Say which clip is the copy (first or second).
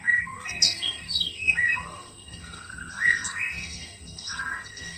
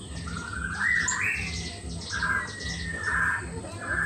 first